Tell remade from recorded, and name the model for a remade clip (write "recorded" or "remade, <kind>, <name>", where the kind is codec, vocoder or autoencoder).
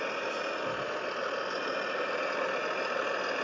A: recorded